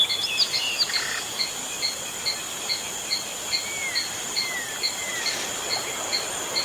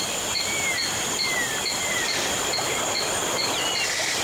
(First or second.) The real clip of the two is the first